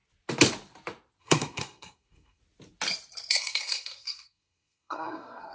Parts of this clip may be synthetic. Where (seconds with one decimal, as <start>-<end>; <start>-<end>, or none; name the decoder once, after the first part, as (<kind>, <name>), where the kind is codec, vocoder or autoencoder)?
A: 1.2-2.4 (codec, SNAC); 3.3-5.5